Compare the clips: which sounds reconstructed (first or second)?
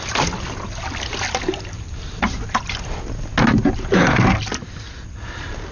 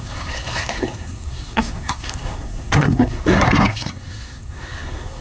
second